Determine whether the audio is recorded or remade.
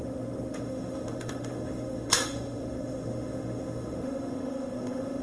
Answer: remade